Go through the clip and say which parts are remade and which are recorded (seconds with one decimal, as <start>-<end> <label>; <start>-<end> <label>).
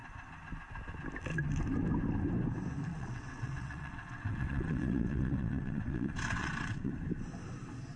0.0-2.9 recorded; 2.9-6.9 remade; 6.9-8.0 recorded